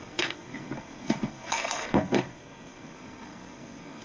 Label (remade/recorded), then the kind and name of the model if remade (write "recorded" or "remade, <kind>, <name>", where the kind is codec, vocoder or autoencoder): remade, codec, SNAC